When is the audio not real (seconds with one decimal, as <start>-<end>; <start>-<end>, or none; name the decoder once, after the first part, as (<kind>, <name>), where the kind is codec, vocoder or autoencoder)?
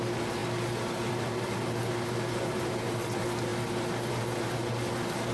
none